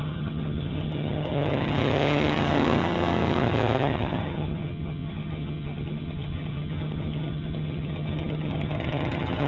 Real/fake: fake